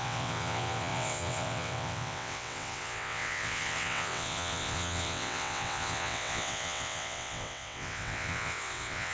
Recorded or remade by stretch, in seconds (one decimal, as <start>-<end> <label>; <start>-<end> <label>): 0.0-9.1 remade